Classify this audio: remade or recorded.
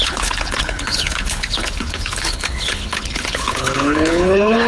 remade